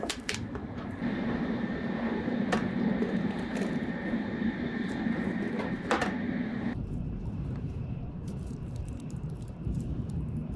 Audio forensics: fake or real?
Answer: fake